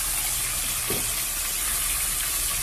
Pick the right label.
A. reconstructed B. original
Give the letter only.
B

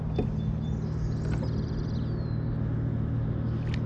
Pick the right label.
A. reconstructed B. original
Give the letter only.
B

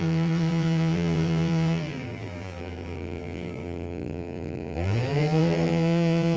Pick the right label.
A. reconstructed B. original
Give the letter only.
A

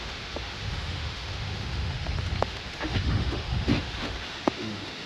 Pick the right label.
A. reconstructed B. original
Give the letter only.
A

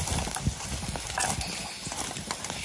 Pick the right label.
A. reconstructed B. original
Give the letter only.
B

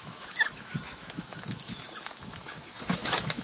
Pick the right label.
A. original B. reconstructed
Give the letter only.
B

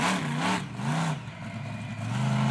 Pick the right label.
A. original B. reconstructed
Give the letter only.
A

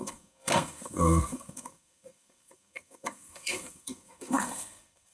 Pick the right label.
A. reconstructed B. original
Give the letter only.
A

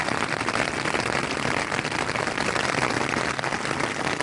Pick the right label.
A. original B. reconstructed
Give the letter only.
A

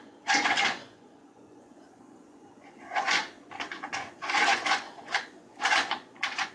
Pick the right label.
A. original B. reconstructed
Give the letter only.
B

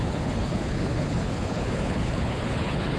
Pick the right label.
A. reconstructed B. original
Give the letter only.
A